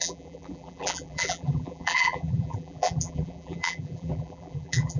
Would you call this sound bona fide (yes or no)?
no